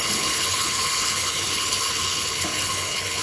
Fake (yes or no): yes